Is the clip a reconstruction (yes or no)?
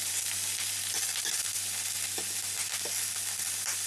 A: no